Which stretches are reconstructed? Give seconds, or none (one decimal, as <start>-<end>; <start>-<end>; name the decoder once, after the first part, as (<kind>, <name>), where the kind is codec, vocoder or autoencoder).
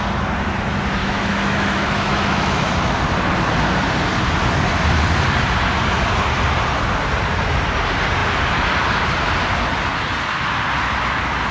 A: 1.0-3.0 (autoencoder, DAC-VAE)